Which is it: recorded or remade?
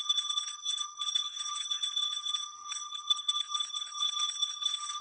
remade